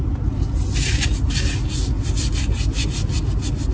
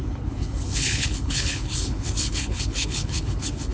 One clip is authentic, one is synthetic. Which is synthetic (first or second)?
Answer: second